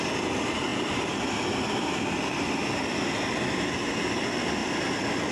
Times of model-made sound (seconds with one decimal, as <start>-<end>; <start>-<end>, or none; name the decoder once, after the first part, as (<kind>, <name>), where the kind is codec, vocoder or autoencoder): none